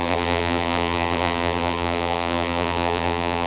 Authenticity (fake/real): fake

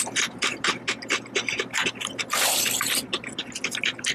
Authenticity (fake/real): real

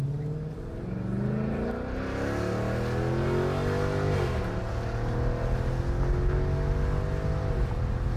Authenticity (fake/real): real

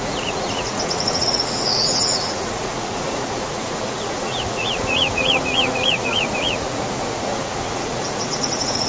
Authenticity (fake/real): fake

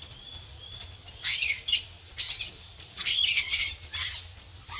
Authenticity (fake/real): fake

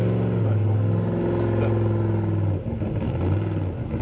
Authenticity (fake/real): real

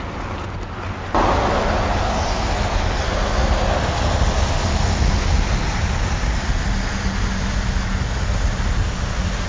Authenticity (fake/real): real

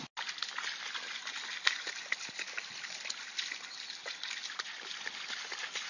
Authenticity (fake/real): real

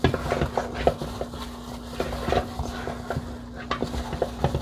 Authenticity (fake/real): real